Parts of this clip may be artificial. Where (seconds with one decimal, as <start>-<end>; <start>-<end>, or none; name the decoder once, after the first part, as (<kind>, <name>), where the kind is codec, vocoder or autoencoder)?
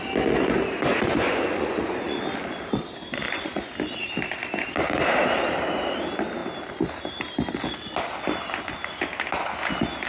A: 0.9-2.2 (vocoder, Vocos); 3.0-3.7